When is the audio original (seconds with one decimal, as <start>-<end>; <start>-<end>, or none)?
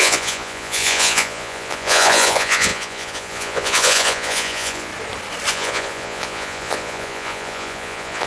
4.9-5.5